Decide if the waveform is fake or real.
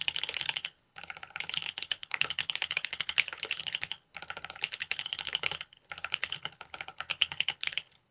fake